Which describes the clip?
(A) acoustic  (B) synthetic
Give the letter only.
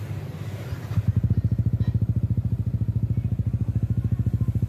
A